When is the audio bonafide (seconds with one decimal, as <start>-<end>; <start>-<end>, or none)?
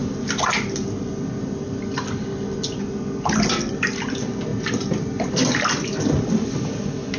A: 0.0-7.2